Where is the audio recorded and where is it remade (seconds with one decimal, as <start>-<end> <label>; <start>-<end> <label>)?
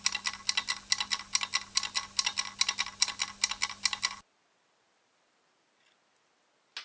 0.0-6.8 recorded